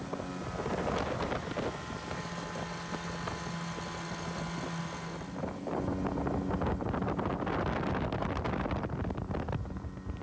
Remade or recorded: recorded